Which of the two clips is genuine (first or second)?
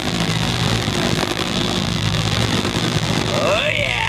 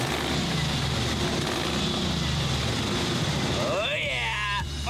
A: second